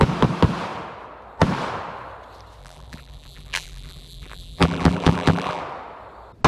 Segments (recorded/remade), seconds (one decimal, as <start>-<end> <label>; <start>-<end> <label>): 0.0-2.6 recorded; 2.6-5.6 remade; 5.6-6.5 recorded